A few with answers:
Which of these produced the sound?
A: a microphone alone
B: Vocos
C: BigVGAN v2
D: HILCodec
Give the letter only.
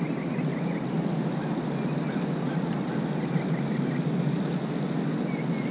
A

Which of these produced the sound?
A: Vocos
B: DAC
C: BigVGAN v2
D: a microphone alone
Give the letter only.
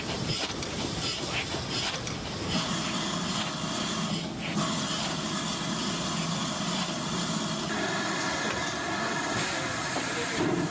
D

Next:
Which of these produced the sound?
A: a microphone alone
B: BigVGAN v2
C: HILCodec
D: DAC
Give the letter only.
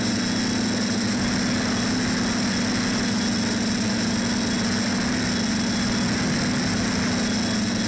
A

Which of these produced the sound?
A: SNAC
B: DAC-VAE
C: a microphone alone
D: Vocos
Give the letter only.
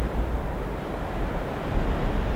C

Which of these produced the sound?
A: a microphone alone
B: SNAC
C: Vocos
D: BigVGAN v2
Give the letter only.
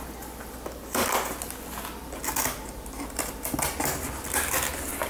A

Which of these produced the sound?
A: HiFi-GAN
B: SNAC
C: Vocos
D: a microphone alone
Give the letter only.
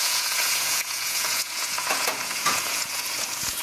C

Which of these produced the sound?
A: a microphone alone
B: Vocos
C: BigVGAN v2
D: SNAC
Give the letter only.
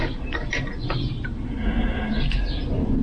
A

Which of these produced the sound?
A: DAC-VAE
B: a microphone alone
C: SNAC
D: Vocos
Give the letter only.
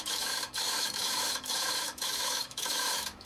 A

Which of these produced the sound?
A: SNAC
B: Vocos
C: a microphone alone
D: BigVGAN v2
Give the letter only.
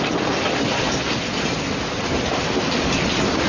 C